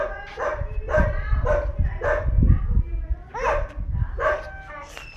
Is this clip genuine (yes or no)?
yes